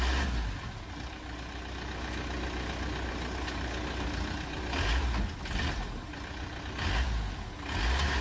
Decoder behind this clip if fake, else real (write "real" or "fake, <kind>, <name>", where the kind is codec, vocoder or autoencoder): real